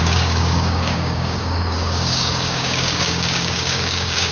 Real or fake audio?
fake